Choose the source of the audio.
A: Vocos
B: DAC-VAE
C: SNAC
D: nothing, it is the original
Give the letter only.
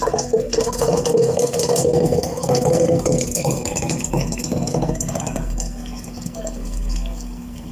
C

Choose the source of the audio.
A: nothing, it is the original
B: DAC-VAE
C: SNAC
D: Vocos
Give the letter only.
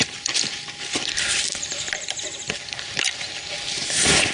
A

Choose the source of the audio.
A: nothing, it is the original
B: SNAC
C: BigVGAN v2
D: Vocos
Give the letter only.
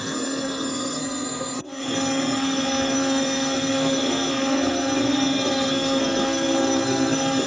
B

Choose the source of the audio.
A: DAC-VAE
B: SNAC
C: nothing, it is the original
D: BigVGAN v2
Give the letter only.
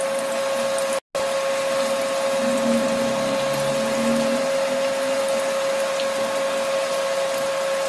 C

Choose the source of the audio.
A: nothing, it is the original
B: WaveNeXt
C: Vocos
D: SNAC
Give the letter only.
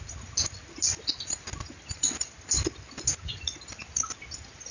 A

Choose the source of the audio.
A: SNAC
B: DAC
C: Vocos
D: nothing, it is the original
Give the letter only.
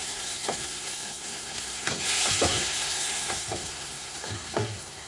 A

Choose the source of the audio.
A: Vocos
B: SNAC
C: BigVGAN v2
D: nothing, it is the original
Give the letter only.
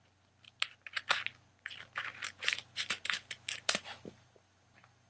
D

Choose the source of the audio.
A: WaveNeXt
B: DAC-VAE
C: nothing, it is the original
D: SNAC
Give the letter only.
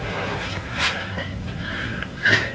D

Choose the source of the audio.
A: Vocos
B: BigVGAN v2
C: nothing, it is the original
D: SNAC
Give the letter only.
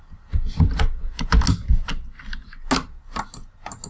C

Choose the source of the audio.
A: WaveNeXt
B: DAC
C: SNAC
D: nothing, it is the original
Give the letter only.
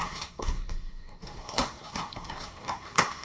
C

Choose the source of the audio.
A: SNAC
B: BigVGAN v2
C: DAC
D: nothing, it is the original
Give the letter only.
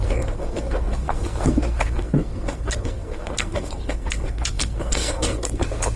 A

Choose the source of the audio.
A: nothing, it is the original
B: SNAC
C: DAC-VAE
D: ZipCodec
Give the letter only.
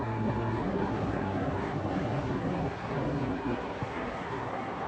B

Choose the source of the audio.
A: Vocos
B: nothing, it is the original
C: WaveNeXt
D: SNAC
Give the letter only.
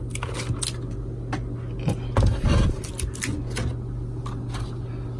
B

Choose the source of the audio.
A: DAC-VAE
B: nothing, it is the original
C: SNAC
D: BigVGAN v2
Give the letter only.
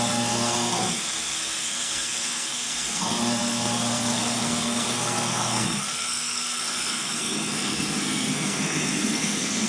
C